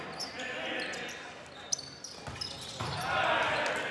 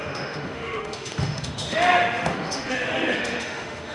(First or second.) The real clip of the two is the first